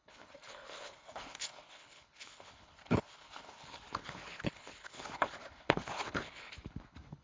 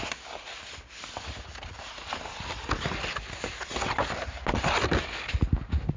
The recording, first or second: second